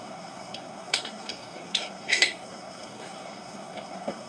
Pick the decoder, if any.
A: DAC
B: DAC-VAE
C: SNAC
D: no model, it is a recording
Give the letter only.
C